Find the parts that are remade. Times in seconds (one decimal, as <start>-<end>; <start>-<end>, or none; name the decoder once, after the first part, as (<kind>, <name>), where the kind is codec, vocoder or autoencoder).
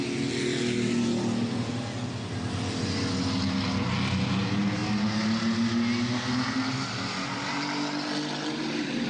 none